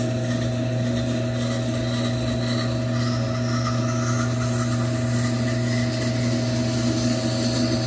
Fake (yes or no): no